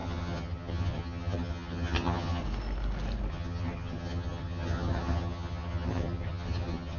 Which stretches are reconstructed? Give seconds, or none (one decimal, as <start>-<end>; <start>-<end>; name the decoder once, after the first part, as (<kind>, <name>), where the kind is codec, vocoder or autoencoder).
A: 0.0-2.4 (vocoder, HiFi-GAN); 3.3-7.0